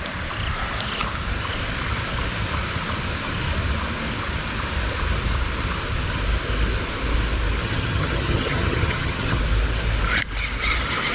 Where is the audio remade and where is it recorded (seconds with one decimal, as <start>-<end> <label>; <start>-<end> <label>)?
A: 0.0-7.6 recorded; 7.6-9.4 remade; 9.4-11.1 recorded